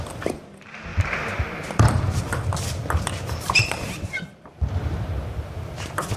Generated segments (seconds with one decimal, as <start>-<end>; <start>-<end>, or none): 0.9-4.6